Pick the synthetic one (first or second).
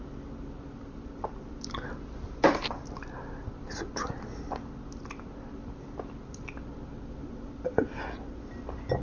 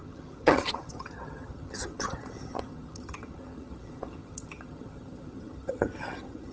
second